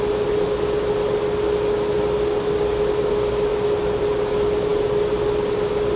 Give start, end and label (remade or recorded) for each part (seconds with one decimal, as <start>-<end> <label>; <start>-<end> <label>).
0.0-3.5 recorded; 3.5-4.0 remade; 4.0-6.0 recorded